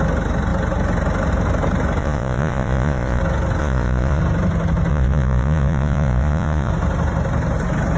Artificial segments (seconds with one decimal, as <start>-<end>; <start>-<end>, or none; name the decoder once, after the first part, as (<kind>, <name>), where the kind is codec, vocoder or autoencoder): 2.0-3.2 (vocoder, Vocos); 3.6-4.2; 4.9-6.7